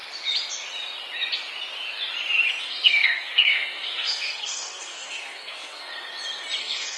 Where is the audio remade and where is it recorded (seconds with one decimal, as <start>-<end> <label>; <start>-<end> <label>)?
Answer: 0.0-2.6 recorded; 2.6-5.9 remade; 5.9-6.6 recorded; 6.6-7.0 remade